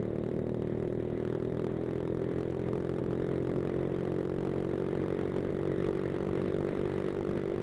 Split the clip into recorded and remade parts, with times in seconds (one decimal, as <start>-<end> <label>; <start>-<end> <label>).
0.0-7.6 remade